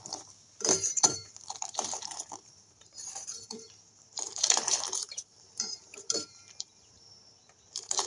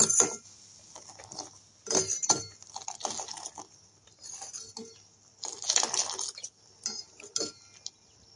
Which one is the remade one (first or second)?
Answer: first